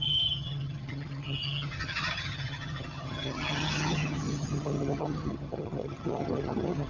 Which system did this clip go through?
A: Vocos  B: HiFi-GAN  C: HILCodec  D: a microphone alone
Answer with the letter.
B